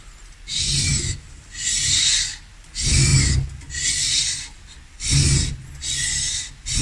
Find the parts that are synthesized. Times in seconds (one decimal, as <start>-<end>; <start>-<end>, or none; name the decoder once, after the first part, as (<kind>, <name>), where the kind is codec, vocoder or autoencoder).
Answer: none